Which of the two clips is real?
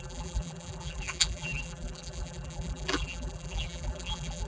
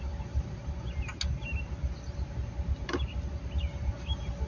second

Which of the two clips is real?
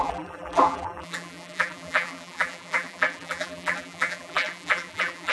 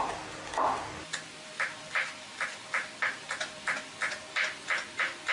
second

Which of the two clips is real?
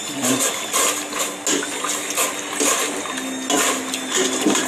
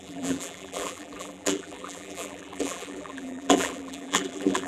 first